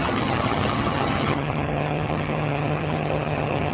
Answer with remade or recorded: remade